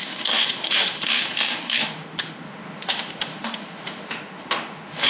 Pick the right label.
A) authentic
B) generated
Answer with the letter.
B